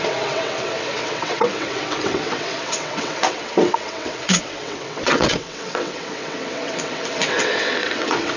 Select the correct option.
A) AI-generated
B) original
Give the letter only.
A